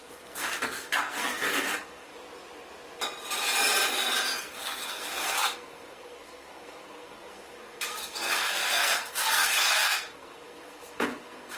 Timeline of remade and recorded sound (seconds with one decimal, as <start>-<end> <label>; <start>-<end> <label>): 0.0-2.1 remade; 2.1-4.4 recorded; 4.4-11.6 remade